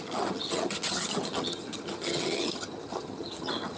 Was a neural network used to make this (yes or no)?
yes